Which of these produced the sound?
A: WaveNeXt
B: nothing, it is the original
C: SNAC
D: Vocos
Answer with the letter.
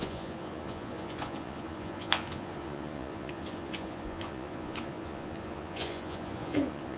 D